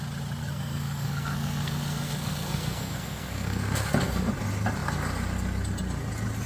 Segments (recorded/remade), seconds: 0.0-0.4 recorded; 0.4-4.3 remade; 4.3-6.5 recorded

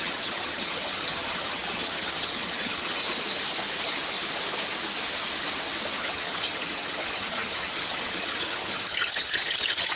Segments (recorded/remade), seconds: 0.0-3.0 remade; 3.0-6.0 recorded; 6.0-10.0 remade

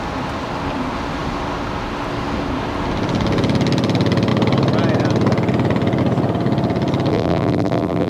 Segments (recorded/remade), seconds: 0.0-7.1 recorded; 7.1-8.1 remade

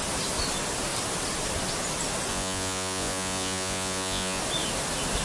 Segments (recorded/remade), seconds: 0.0-2.3 recorded; 2.3-4.4 remade; 4.4-5.2 recorded

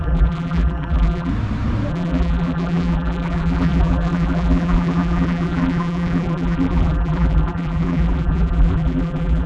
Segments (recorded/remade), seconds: 0.0-1.3 remade; 1.3-1.9 recorded; 1.9-9.5 remade